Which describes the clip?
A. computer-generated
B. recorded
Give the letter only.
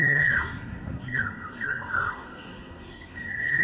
A